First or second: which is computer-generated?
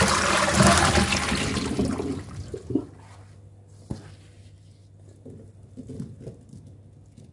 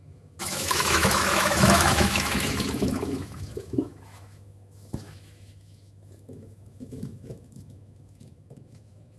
second